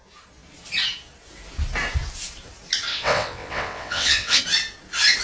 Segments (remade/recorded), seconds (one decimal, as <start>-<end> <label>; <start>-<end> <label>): 0.0-2.9 recorded; 2.9-4.4 remade; 4.4-5.2 recorded